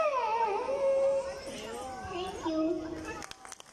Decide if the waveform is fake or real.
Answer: real